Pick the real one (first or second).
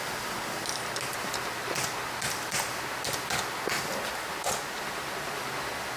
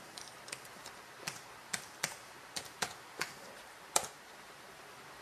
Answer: first